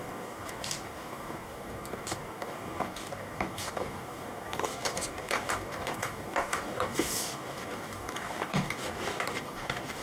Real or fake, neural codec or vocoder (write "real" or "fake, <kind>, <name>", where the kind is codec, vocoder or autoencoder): fake, codec, DAC